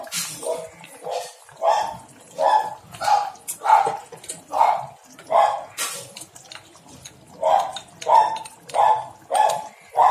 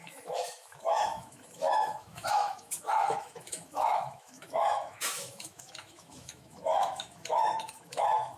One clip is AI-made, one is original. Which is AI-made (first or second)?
second